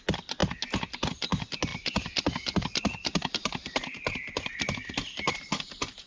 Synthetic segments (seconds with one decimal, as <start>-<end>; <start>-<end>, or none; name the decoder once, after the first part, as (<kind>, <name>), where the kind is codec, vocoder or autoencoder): 1.7-5.4 (vocoder, BigVGAN v2)